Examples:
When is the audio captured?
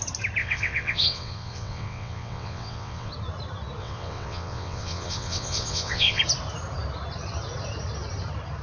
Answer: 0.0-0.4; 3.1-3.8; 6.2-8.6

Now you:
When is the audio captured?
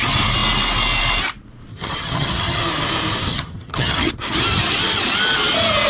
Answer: 0.0-1.7; 2.6-3.3; 4.1-5.9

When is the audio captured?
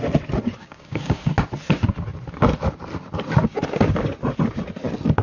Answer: 0.0-0.6; 1.3-5.2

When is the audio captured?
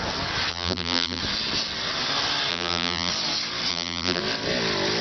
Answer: 0.0-0.5; 1.2-2.5; 3.1-3.7; 4.2-5.0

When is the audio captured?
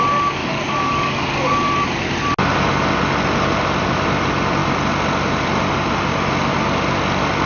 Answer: 0.0-0.4; 1.8-7.5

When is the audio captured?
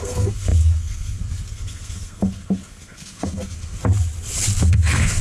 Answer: 3.8-4.6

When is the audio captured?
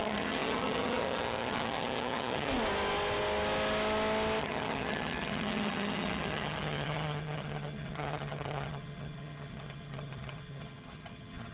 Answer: 2.5-4.4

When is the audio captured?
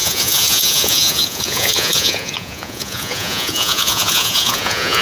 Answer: none